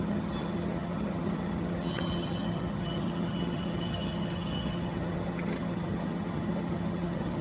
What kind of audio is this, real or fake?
fake